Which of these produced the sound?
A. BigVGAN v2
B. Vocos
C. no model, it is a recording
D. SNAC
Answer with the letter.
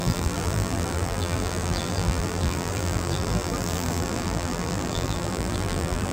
A